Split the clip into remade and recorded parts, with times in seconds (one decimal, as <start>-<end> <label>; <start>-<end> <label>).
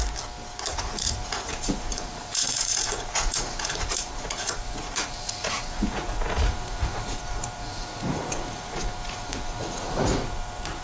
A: 0.0-0.7 recorded; 0.7-10.8 remade